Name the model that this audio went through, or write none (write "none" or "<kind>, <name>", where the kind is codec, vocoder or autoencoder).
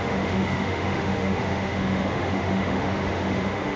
autoencoder, DAC-VAE